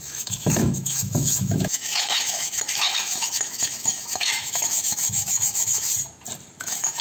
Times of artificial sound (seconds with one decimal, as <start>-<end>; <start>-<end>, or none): 0.0-5.9; 6.6-7.0